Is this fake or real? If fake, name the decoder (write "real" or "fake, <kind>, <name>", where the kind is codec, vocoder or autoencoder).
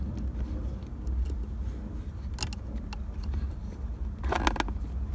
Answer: real